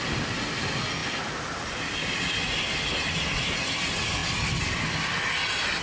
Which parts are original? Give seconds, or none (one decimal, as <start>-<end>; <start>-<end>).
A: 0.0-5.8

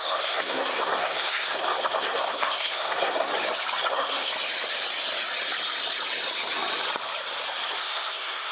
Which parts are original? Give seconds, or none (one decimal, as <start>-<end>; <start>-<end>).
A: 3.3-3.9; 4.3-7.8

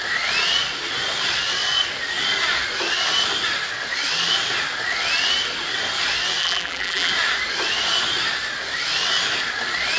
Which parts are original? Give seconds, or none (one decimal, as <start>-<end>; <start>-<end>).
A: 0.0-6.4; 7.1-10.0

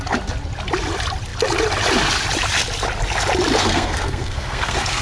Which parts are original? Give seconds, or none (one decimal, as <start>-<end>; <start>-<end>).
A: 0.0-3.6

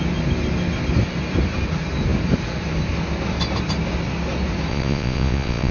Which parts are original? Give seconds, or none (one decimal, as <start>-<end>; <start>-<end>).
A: 0.0-4.7

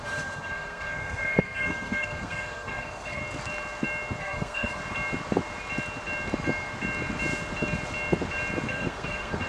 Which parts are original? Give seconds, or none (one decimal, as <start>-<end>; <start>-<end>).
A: 3.2-4.2; 4.8-8.7

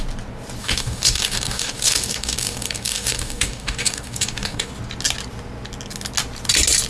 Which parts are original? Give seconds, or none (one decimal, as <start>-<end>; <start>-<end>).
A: 0.0-0.6; 4.7-6.9

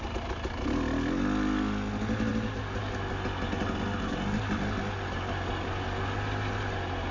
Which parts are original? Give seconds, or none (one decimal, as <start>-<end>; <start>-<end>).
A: 0.0-7.1